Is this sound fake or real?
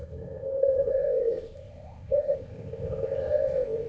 fake